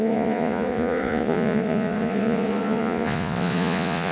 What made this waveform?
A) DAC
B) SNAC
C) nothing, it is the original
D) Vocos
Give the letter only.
D